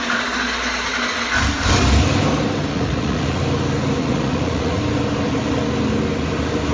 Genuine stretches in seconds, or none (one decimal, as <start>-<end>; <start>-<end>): 0.0-2.7; 3.4-4.0; 4.8-6.7